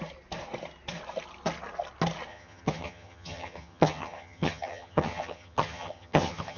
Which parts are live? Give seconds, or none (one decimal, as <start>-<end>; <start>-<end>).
0.0-2.3